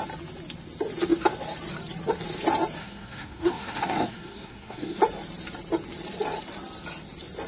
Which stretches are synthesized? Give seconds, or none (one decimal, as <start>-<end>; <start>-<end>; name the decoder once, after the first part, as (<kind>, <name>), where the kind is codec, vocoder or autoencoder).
2.8-5.0 (codec, SNAC)